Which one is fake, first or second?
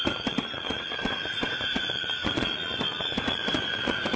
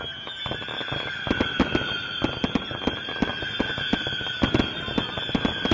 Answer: first